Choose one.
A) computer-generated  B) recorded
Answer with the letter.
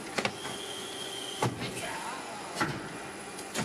A